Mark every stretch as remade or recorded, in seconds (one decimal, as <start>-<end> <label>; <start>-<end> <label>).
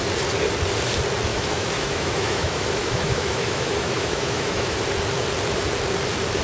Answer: 0.0-1.3 recorded; 1.3-4.8 remade; 4.8-6.4 recorded